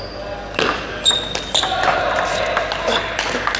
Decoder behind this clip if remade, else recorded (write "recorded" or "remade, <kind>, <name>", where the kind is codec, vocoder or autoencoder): recorded